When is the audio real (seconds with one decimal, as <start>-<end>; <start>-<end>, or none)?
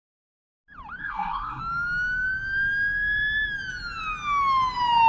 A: 0.0-1.0; 1.6-5.1